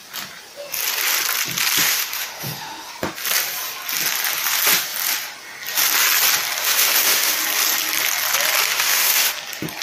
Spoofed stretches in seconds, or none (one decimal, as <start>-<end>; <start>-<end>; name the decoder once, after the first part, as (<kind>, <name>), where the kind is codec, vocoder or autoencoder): 1.8-2.9 (autoencoder, DAC-VAE); 6.6-7.3; 8.7-9.3